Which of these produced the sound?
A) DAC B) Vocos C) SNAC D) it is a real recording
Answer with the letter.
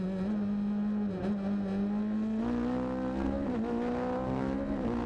D